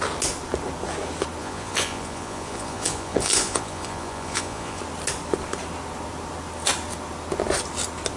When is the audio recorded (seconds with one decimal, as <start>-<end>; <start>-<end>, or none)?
0.0-1.4; 4.8-8.2